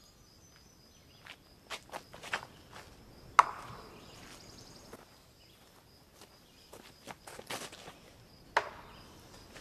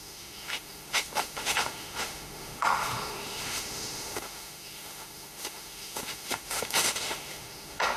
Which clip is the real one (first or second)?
first